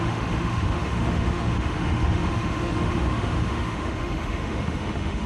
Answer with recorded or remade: remade